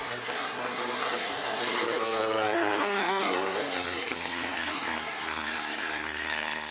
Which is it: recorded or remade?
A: remade